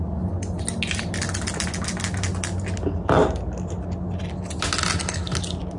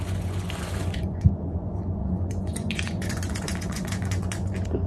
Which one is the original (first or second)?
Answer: first